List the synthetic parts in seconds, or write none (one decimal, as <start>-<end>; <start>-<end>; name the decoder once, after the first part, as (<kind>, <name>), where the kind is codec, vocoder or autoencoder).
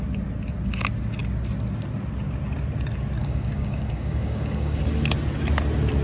3.2-4.8 (codec, DAC)